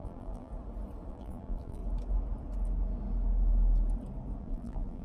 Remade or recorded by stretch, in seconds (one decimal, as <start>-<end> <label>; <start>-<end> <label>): 0.0-0.5 remade; 0.5-1.1 recorded; 1.1-1.8 remade; 1.8-4.4 recorded; 4.4-5.0 remade